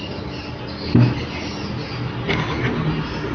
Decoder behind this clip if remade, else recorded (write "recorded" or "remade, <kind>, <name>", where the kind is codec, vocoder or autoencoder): recorded